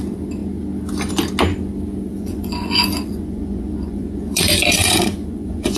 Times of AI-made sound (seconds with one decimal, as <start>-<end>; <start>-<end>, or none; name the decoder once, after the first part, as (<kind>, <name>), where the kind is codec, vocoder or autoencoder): 2.1-5.8 (vocoder, Vocos)